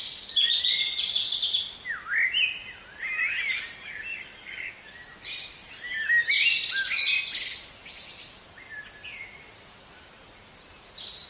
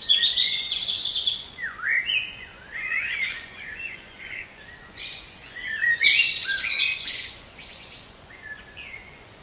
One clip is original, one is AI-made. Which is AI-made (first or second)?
second